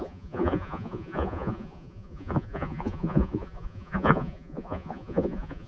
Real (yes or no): no